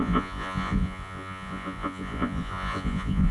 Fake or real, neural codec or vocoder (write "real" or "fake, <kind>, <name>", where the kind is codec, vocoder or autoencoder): fake, vocoder, Vocos